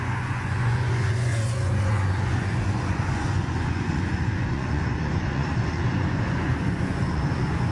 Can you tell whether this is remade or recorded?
remade